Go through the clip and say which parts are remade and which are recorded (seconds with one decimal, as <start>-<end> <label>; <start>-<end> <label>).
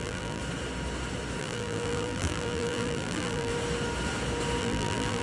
0.0-0.4 remade; 0.4-1.4 recorded; 1.4-3.5 remade; 3.5-4.6 recorded; 4.6-5.2 remade